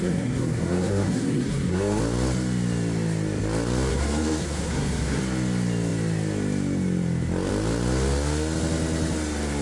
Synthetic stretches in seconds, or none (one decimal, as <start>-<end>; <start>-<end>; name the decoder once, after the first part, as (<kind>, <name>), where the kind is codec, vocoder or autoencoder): 0.0-2.0 (codec, SNAC); 3.9-5.2